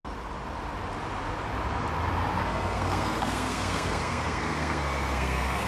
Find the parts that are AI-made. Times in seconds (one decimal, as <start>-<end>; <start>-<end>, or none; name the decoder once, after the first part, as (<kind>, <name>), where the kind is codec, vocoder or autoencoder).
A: 2.4-5.7 (codec, SNAC)